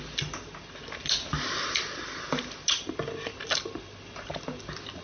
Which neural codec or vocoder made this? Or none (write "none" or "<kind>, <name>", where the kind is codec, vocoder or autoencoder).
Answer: none